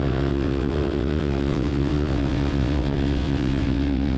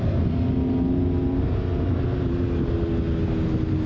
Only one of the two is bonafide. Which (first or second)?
second